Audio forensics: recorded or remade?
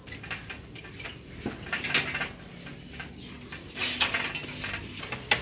recorded